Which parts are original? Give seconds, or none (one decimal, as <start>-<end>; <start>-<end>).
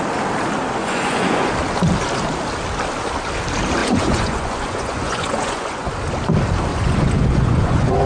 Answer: 0.0-0.8; 1.5-3.8; 5.9-6.7